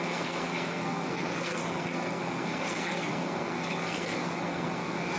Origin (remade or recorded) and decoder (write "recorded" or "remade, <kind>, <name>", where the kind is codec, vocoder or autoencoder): remade, codec, SNAC